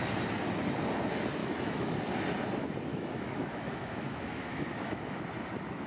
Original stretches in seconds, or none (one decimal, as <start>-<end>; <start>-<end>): 0.0-1.4; 1.9-2.9; 5.2-5.9